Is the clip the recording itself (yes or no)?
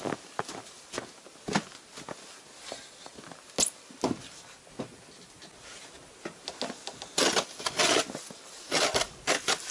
yes